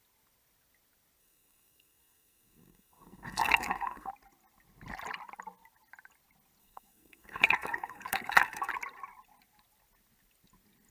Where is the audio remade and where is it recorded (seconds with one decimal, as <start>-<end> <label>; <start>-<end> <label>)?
0.0-1.2 recorded; 1.2-4.1 remade; 4.1-6.6 recorded; 6.6-8.7 remade; 8.7-10.9 recorded